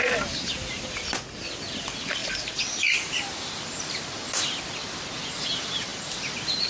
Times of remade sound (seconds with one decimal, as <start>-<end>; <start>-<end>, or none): 2.2-4.7; 5.9-6.7